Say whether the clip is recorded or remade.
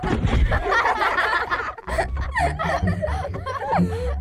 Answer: recorded